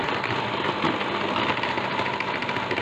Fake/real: real